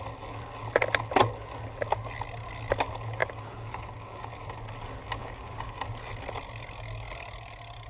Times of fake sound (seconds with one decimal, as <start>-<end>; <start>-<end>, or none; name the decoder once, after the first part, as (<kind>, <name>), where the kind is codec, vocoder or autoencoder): 3.2-4.3 (codec, DAC); 5.2-5.8